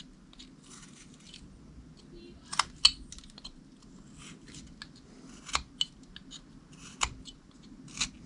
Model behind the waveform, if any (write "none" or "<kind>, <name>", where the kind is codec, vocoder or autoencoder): none